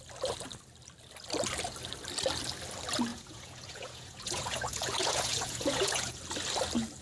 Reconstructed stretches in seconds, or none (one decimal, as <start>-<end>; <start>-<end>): 3.1-6.2